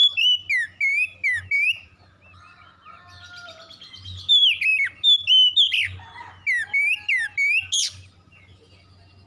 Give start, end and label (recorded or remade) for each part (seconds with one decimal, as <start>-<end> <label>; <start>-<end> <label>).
0.0-9.3 recorded